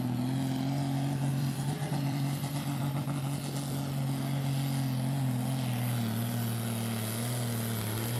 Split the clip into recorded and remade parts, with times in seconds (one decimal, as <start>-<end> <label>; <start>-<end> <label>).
0.0-1.3 recorded; 1.3-2.8 remade; 2.8-8.2 recorded